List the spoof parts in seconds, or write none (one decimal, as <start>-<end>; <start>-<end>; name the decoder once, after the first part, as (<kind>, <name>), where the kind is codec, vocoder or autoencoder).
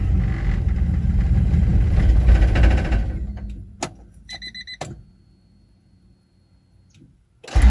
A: none